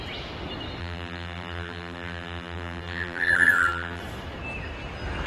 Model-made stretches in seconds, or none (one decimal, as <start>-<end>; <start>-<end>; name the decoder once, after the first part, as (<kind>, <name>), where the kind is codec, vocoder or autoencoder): 0.8-4.0 (vocoder, BigVGAN v2)